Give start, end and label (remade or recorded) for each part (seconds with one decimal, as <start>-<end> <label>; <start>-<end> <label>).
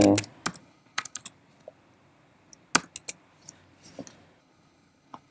0.0-0.6 recorded; 0.6-1.2 remade; 1.2-4.4 recorded; 4.4-5.3 remade